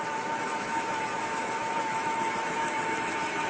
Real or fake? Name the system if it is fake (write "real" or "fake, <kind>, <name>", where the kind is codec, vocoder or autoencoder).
fake, autoencoder, DAC-VAE